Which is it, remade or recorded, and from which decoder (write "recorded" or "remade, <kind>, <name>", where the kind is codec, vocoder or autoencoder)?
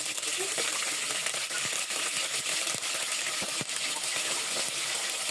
recorded